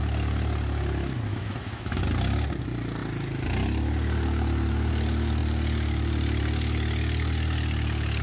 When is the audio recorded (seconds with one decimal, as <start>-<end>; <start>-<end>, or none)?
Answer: 0.0-1.3; 2.0-8.2